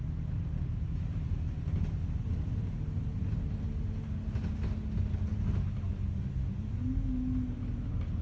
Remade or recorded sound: recorded